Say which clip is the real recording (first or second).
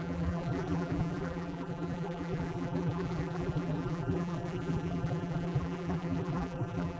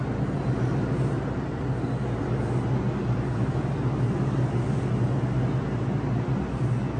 second